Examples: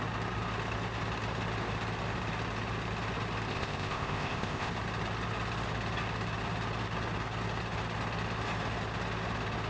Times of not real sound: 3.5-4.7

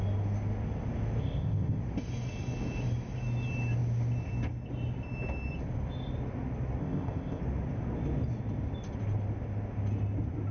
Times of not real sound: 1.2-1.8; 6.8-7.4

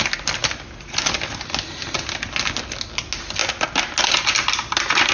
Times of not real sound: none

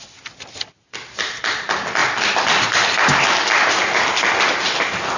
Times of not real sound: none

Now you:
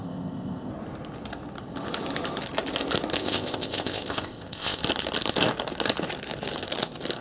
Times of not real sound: 0.0-0.7; 3.2-4.8

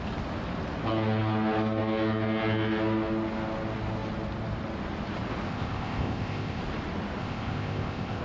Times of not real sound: 5.5-6.6; 7.2-8.2

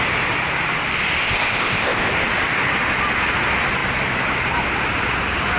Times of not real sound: 1.2-2.1

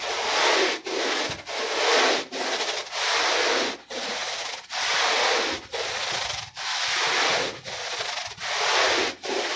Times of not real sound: none